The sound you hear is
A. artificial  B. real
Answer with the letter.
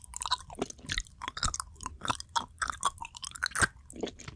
B